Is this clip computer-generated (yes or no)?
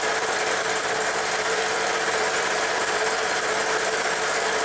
yes